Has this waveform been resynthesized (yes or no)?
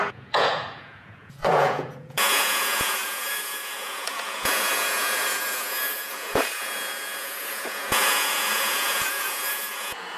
yes